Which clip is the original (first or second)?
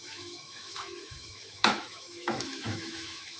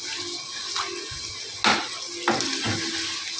second